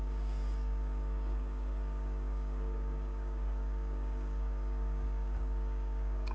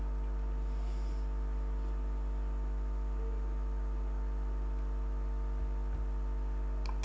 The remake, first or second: first